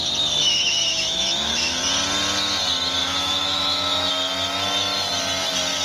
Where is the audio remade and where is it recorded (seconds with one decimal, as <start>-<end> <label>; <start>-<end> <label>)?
0.0-0.4 recorded; 0.4-1.8 remade; 1.8-3.0 recorded; 3.0-4.1 remade; 4.1-5.8 recorded